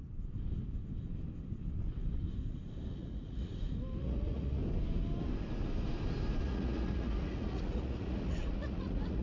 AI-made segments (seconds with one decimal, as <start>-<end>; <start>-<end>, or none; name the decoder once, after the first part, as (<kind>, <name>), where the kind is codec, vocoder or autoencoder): 2.9-3.5 (vocoder, Vocos); 4.0-4.6; 6.4-9.2